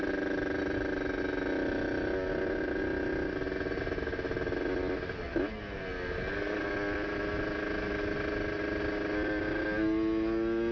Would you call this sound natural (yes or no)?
yes